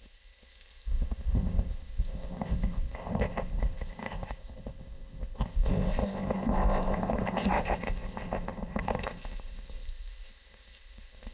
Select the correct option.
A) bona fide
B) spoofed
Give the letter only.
B